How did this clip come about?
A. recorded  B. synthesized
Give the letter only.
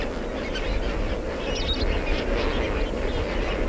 A